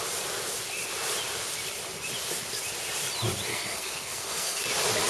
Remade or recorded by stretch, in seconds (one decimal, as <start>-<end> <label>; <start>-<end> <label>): 0.0-3.5 recorded; 3.5-4.6 remade; 4.6-5.1 recorded